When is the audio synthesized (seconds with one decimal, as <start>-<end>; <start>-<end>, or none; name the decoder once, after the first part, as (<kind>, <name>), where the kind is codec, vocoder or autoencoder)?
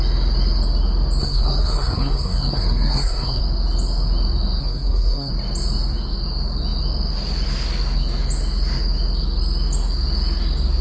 1.2-3.4 (codec, SNAC); 4.6-5.3